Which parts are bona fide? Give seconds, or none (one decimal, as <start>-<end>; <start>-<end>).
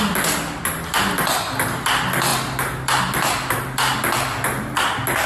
0.0-5.3